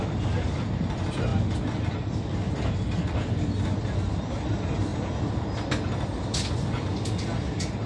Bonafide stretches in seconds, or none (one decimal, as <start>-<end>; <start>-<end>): 0.0-7.9